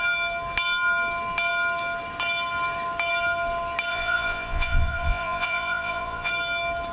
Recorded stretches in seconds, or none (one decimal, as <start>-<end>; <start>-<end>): 0.0-3.9; 6.3-6.9